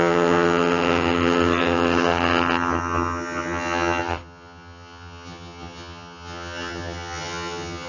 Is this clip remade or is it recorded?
remade